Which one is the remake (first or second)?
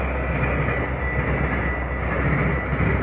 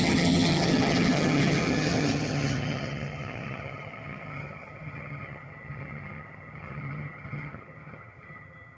second